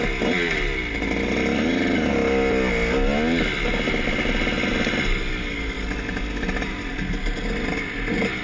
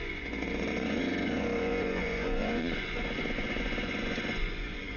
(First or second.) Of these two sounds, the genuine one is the first